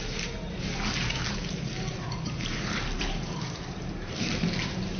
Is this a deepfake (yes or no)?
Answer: yes